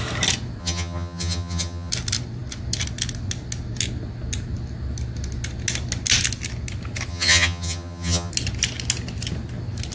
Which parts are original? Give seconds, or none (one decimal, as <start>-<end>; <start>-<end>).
0.0-0.6; 1.9-7.1; 8.3-9.9